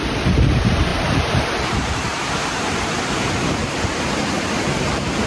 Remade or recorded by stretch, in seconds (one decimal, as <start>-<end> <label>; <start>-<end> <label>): 0.0-5.3 remade